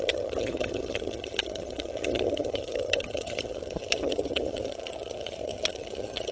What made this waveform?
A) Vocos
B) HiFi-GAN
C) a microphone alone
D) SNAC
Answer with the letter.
B